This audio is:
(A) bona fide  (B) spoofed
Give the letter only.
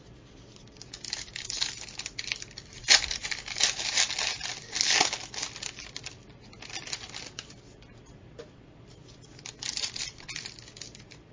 A